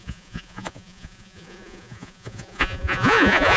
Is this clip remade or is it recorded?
remade